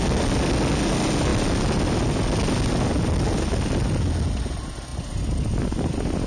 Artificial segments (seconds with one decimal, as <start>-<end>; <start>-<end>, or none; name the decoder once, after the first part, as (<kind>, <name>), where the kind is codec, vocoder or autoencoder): none

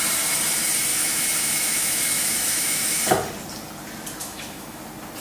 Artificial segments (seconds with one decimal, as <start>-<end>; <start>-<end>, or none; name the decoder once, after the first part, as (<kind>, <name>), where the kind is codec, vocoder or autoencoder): 0.9-3.0 (autoencoder, DAC-VAE); 4.2-4.8

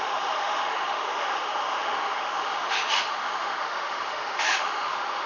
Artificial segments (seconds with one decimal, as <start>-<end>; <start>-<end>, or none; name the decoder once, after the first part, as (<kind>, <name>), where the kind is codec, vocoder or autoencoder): 0.0-5.3 (autoencoder, DAC-VAE)